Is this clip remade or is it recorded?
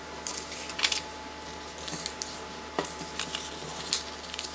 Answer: recorded